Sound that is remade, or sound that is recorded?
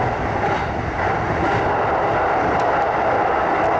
remade